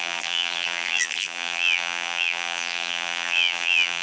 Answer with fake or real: fake